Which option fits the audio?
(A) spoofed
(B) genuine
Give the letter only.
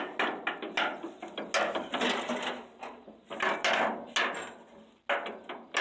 B